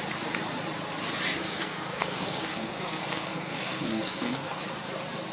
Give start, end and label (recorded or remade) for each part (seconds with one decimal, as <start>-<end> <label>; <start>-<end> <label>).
0.0-1.4 recorded; 1.4-4.6 remade; 4.6-5.3 recorded

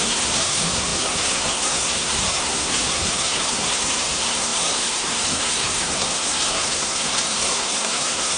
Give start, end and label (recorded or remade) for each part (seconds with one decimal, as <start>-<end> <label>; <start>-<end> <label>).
0.0-8.4 remade

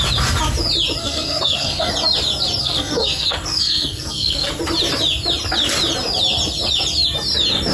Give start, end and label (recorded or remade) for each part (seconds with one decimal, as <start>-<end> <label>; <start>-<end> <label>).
0.0-1.0 recorded; 1.0-1.9 remade; 1.9-2.6 recorded; 2.6-4.5 remade; 4.5-7.7 recorded

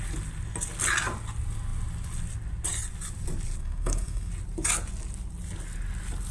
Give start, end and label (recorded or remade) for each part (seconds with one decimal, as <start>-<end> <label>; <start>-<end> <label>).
0.0-3.6 recorded; 3.6-4.3 remade; 4.3-6.3 recorded

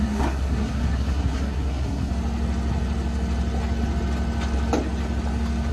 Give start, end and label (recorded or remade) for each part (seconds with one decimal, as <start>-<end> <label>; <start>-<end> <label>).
0.0-2.1 remade; 2.1-5.7 recorded

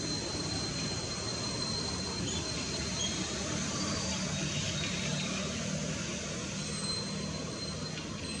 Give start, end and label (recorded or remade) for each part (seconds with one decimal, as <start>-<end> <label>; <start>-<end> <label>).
0.0-8.4 recorded

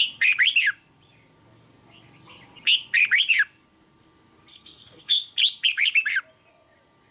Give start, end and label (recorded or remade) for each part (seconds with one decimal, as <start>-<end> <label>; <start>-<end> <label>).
0.0-4.5 recorded; 4.5-5.3 remade; 5.3-7.1 recorded

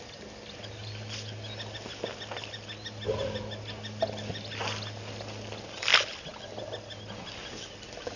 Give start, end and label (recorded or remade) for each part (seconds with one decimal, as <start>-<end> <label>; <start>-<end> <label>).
0.0-8.2 recorded